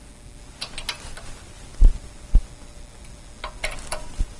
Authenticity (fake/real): real